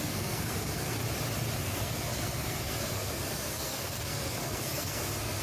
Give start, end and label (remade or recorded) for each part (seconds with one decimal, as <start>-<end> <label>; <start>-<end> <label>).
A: 0.0-1.0 remade; 1.0-1.6 recorded; 1.6-5.4 remade